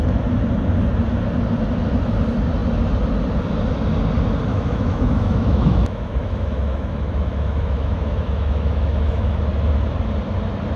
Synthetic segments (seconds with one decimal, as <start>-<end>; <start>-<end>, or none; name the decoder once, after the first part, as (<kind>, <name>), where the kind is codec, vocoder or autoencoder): 4.5-9.4 (autoencoder, DAC-VAE)